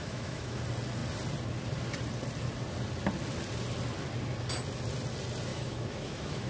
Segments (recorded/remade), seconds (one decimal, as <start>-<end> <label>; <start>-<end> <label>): 0.0-0.6 remade; 0.6-5.5 recorded; 5.5-6.5 remade